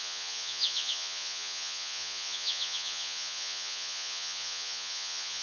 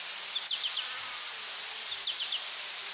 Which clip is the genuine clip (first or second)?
second